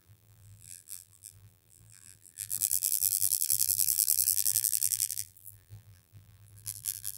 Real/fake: fake